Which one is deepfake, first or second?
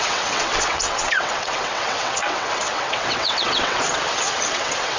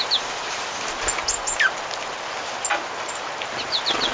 first